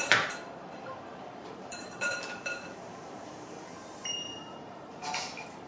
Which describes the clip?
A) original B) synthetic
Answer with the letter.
B